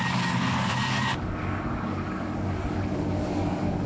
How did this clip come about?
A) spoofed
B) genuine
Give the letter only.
A